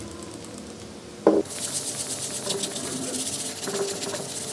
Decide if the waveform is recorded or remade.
recorded